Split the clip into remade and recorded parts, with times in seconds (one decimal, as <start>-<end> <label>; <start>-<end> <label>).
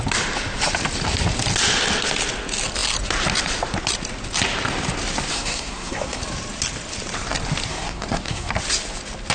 0.0-5.3 recorded; 5.3-6.2 remade; 6.2-7.7 recorded; 7.7-8.5 remade; 8.5-9.3 recorded